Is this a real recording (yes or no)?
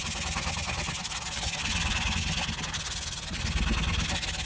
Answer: yes